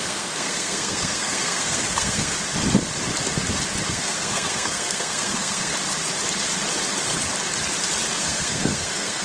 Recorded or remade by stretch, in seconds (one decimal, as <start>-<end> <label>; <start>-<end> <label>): 0.0-2.4 remade; 2.4-3.9 recorded; 3.9-5.7 remade; 5.7-8.2 recorded; 8.2-9.2 remade